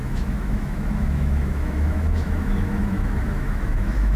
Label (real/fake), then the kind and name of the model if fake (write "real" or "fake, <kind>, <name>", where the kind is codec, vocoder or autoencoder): fake, autoencoder, DAC-VAE